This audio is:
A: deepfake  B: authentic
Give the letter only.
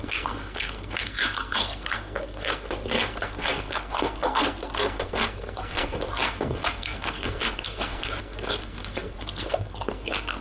A